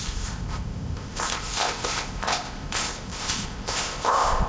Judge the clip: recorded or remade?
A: remade